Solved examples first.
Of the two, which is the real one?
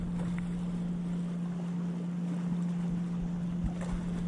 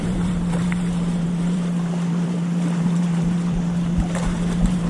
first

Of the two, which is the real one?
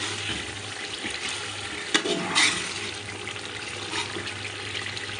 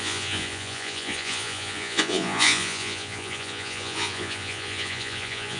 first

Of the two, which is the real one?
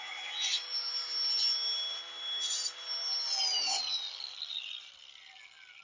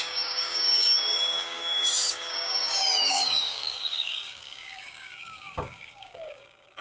first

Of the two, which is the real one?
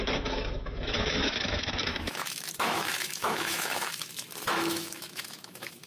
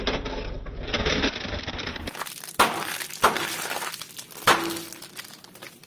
second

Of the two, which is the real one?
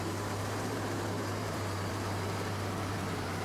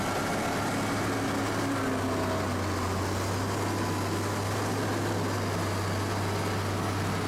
second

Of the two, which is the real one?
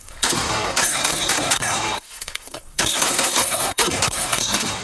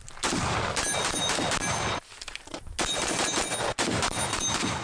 second